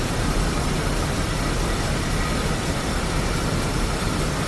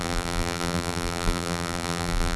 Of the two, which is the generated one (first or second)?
second